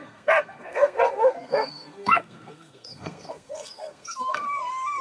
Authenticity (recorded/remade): remade